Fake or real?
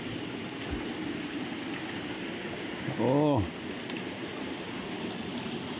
real